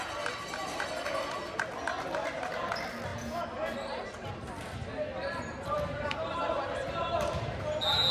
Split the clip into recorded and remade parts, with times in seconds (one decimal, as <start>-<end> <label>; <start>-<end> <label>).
0.0-5.2 recorded; 5.2-7.1 remade; 7.1-8.1 recorded